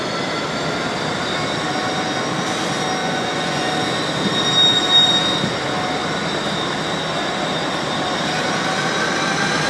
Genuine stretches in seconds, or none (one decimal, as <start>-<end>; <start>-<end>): 0.0-3.0; 3.7-9.7